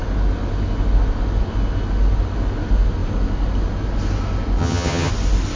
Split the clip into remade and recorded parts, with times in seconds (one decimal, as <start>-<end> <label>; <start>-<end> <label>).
0.0-4.6 recorded; 4.6-5.1 remade; 5.1-5.6 recorded